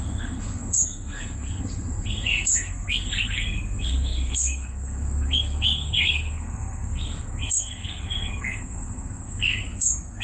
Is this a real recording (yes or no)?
no